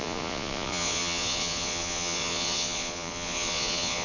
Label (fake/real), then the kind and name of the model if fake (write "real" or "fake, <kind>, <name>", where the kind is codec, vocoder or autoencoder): fake, vocoder, Vocos